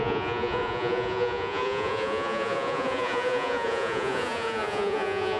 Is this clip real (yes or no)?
no